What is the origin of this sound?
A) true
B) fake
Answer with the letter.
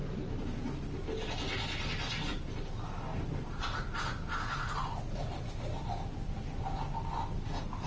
A